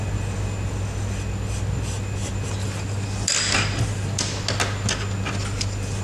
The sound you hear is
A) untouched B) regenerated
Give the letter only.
A